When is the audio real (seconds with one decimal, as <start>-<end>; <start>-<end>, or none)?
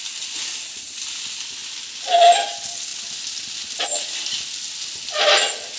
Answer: 0.0-5.8